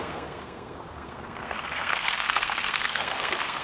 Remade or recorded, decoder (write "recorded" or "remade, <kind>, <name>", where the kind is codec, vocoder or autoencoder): remade, codec, SNAC